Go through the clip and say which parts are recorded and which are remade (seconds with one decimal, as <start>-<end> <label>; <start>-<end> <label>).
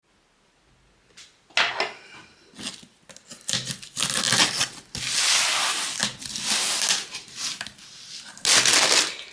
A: 0.0-9.3 recorded